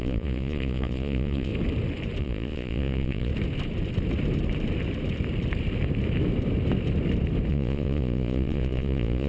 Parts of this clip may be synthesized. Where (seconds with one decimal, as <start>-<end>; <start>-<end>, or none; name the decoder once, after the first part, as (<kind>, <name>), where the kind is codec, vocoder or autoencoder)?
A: 0.0-1.5 (vocoder, Vocos); 2.2-3.3; 7.5-9.3